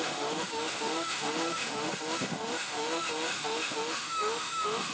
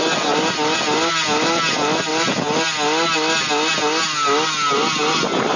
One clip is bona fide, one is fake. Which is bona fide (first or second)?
second